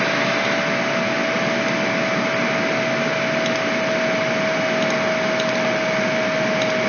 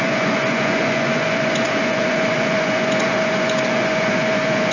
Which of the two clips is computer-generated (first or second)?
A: second